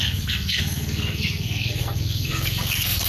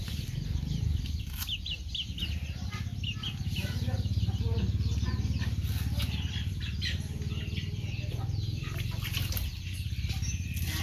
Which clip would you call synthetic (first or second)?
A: first